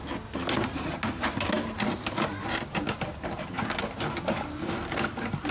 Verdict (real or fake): real